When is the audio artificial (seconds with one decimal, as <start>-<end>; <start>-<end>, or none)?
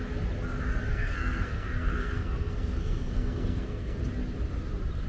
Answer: 0.9-4.0